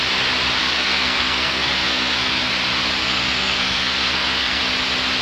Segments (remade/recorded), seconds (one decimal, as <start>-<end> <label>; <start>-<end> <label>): 0.0-0.6 recorded; 0.6-2.5 remade; 2.5-3.0 recorded; 3.0-4.6 remade; 4.6-5.2 recorded